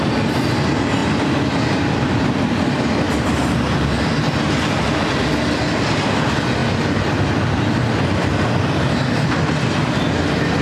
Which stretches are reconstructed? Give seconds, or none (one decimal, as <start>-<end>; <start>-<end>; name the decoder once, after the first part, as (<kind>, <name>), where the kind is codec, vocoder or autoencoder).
none